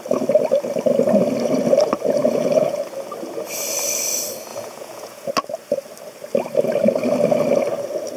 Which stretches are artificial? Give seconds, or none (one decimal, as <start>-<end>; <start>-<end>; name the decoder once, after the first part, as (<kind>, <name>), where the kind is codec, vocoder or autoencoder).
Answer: 2.2-2.8 (vocoder, Vocos); 4.5-5.3